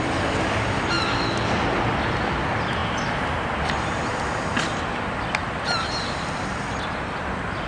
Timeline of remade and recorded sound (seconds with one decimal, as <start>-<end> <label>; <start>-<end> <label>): 0.0-7.7 recorded